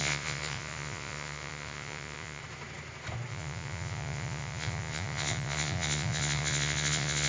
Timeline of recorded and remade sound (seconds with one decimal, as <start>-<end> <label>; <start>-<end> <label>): 0.0-2.4 remade; 2.4-3.3 recorded; 3.3-7.3 remade